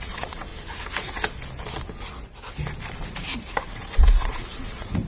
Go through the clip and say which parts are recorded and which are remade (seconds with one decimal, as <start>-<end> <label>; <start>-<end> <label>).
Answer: 0.0-0.5 remade; 0.5-3.6 recorded; 3.6-5.1 remade